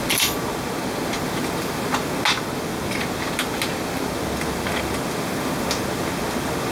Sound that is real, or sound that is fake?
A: real